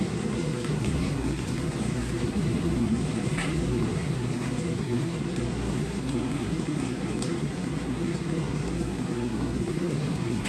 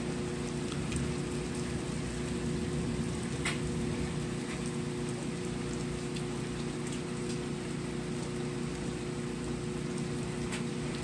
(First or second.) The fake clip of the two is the first